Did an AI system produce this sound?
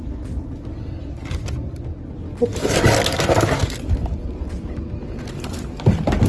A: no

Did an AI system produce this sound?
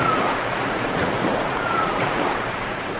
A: yes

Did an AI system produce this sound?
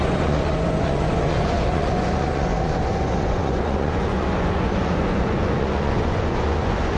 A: yes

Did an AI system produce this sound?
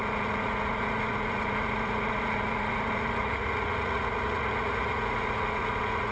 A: yes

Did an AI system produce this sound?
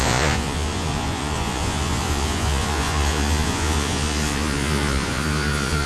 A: yes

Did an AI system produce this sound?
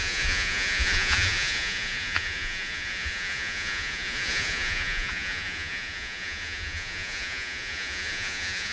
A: yes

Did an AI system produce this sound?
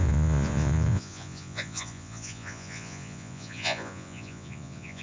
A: yes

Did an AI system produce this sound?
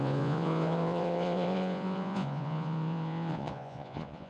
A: yes